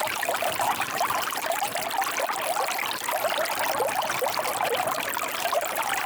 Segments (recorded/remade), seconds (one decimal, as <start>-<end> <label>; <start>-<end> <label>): 0.0-1.7 remade; 1.7-5.4 recorded; 5.4-6.1 remade